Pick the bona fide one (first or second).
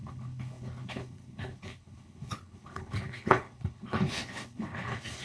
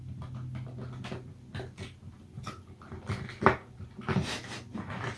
second